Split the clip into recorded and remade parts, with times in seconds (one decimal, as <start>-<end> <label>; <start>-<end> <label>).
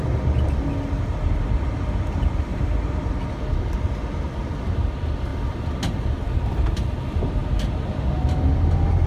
0.0-2.5 recorded; 2.5-3.1 remade; 3.1-7.4 recorded; 7.4-8.1 remade; 8.1-9.1 recorded